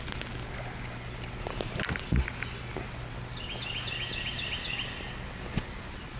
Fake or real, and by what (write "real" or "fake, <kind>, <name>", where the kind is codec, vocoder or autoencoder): real